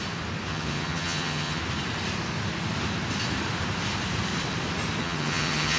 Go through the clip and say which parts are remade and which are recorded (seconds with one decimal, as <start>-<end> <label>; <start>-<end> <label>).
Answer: 0.0-0.5 recorded; 0.5-1.6 remade; 1.6-5.0 recorded; 5.0-5.8 remade